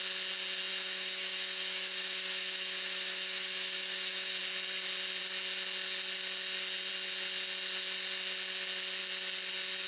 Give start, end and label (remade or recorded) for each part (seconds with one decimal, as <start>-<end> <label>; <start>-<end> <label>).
0.0-0.7 recorded; 0.7-4.4 remade; 4.4-9.9 recorded